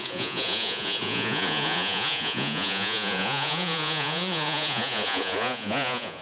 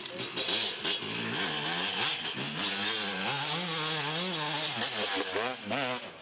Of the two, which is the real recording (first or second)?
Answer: second